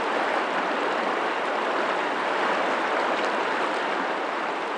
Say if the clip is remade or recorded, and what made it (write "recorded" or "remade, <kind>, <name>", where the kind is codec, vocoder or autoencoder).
recorded